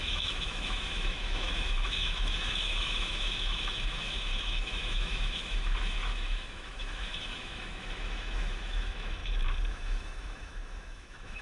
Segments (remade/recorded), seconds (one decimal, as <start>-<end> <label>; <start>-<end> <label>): 0.0-9.2 remade; 9.2-9.7 recorded; 9.7-11.4 remade